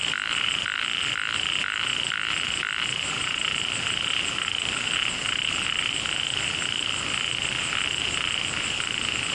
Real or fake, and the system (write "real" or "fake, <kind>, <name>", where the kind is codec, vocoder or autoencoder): real